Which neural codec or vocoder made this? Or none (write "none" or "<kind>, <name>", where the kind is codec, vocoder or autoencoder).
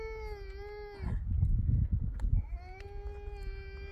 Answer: none